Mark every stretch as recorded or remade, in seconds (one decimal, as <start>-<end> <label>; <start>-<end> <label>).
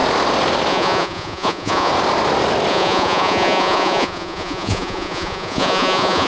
0.0-0.7 recorded; 0.7-1.9 remade; 1.9-2.7 recorded; 2.7-6.3 remade